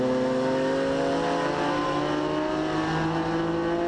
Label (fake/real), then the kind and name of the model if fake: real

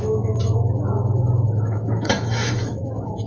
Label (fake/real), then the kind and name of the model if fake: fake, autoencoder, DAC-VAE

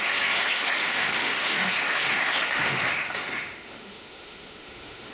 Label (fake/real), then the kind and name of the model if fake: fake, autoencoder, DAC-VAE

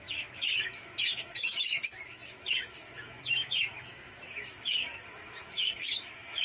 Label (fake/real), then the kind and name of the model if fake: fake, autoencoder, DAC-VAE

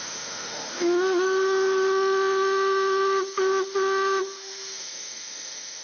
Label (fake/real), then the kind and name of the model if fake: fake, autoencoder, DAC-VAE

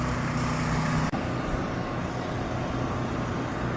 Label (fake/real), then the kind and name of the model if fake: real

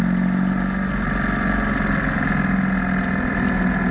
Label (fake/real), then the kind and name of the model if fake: real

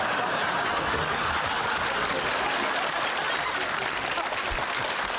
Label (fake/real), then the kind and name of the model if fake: real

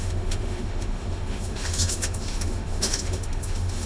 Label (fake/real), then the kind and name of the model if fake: fake, autoencoder, DAC-VAE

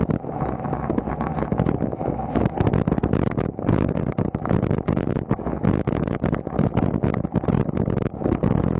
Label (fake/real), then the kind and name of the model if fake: fake, autoencoder, DAC-VAE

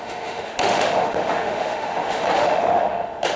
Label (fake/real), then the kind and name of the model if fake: fake, autoencoder, DAC-VAE